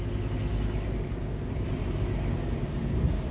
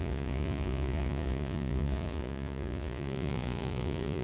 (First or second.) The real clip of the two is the first